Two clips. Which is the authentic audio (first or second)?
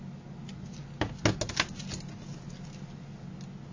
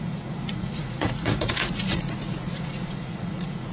first